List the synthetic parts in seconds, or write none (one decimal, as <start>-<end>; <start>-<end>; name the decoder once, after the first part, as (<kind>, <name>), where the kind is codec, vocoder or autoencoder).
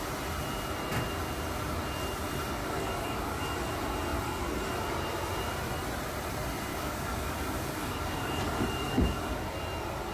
2.6-3.4 (codec, DAC); 6.7-9.4